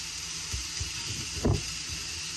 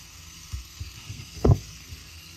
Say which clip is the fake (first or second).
second